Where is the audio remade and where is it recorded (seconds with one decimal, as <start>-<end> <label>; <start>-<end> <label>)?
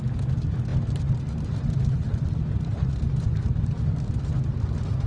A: 0.0-5.1 recorded